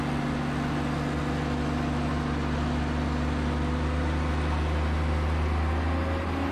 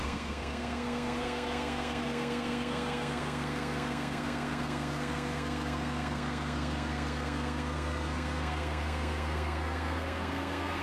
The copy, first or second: second